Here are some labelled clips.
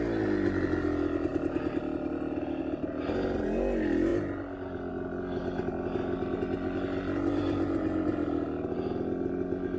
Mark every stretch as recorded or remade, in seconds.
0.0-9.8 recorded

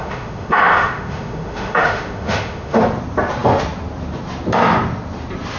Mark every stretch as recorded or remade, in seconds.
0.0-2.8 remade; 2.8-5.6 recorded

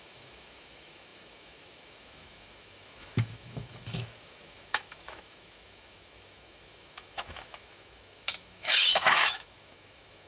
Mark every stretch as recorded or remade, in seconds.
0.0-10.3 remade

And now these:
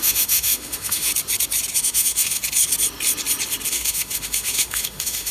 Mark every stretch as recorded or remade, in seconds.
0.0-1.1 remade; 1.1-1.8 recorded; 1.8-2.4 remade; 2.4-3.7 recorded; 3.7-5.3 remade